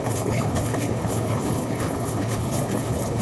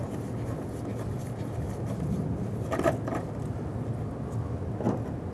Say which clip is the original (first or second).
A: second